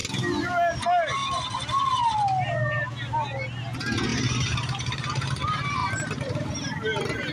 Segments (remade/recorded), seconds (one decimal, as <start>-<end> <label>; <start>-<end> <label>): 0.0-4.1 recorded; 4.1-5.3 remade; 5.3-5.8 recorded; 5.8-6.5 remade; 6.5-7.3 recorded